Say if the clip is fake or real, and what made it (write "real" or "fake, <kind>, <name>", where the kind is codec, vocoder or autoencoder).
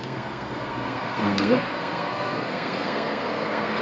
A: fake, codec, SNAC